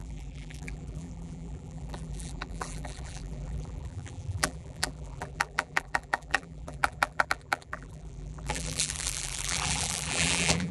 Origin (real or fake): fake